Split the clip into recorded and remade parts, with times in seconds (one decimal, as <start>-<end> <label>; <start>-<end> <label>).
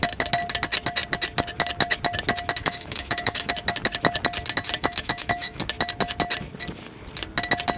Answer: 0.0-2.6 recorded; 2.6-3.5 remade; 3.5-4.8 recorded; 4.8-5.6 remade; 5.6-7.8 recorded